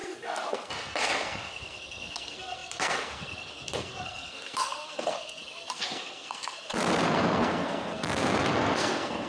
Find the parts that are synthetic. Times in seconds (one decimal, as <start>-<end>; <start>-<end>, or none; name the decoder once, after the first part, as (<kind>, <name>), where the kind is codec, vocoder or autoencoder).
0.0-9.3 (codec, SNAC)